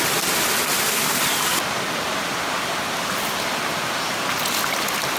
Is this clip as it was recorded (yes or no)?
yes